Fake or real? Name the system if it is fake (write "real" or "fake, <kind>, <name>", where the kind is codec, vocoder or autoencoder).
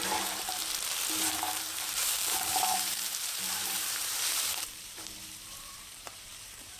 fake, vocoder, BigVGAN v2